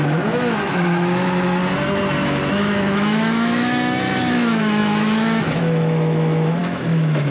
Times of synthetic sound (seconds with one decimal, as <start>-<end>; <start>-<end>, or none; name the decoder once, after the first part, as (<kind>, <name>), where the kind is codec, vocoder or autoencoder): 0.0-1.6 (autoencoder, DAC-VAE); 2.5-7.3